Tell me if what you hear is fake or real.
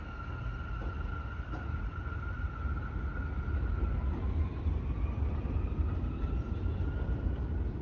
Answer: real